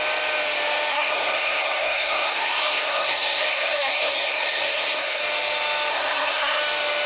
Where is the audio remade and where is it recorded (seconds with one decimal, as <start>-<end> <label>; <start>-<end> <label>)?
0.0-0.9 recorded; 0.9-5.2 remade; 5.2-5.9 recorded; 5.9-6.6 remade; 6.6-7.1 recorded